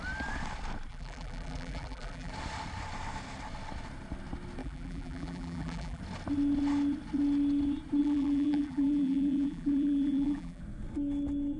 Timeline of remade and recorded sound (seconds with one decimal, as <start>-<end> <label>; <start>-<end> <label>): 0.0-0.9 recorded; 0.9-2.3 remade; 2.3-4.6 recorded; 4.6-6.0 remade; 6.0-8.0 recorded; 8.0-10.6 remade; 10.6-11.6 recorded